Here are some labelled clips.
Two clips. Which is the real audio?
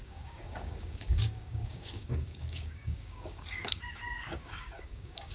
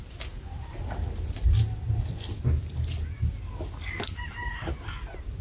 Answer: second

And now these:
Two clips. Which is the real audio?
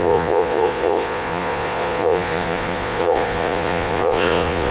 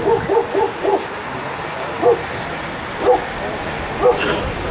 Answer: second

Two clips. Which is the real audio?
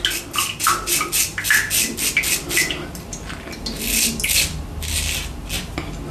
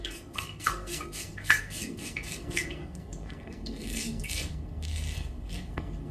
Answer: first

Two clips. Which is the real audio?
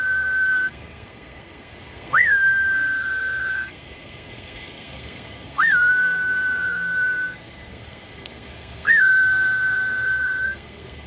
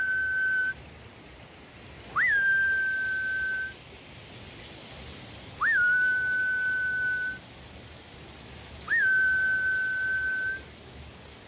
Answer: second